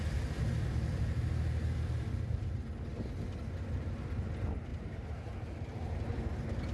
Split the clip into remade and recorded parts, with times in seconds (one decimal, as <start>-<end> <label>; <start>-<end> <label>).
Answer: 0.0-4.7 recorded; 4.7-6.1 remade; 6.1-6.7 recorded